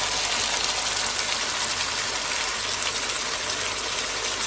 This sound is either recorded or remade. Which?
recorded